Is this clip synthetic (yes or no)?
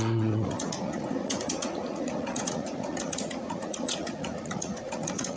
yes